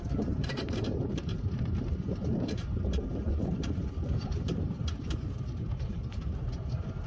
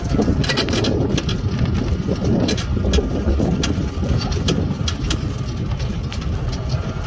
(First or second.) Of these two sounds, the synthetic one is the first